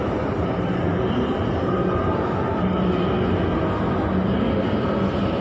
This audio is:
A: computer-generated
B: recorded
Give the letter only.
B